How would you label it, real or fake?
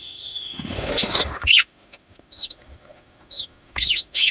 fake